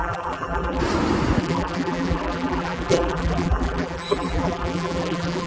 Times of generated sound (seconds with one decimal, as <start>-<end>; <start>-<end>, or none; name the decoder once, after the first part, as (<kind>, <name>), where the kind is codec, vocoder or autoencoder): 0.0-0.8 (vocoder, BigVGAN v2); 1.4-5.5